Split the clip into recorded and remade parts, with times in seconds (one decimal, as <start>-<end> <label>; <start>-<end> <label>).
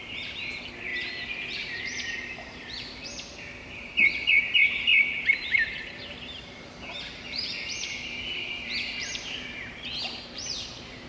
0.0-11.1 remade